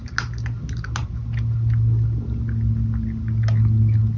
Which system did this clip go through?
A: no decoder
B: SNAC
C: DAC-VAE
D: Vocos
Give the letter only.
A